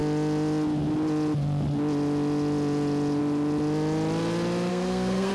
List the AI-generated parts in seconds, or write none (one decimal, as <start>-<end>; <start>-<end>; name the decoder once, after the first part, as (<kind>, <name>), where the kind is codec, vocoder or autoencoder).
4.7-5.3 (codec, SNAC)